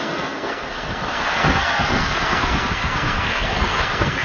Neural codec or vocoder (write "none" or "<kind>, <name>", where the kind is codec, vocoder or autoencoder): codec, SNAC